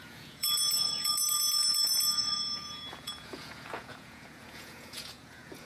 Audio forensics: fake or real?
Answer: fake